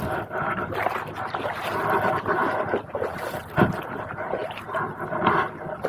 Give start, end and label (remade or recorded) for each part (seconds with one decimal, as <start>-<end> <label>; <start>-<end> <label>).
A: 0.0-5.9 recorded